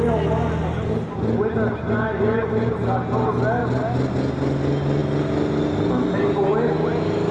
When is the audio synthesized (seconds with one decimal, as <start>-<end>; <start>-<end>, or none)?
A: none